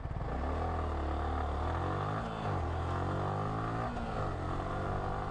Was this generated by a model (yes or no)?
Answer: no